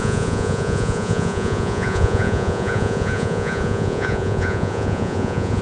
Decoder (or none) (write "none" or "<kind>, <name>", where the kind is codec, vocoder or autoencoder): vocoder, Vocos